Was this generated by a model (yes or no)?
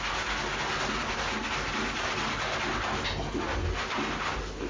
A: no